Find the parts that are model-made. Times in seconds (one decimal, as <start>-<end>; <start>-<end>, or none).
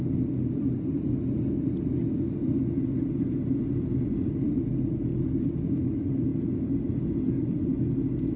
none